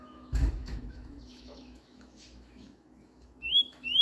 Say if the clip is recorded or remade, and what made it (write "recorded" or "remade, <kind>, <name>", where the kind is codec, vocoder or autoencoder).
remade, autoencoder, DAC-VAE